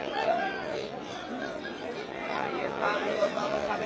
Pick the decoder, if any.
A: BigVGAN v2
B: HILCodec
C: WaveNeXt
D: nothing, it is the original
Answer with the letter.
C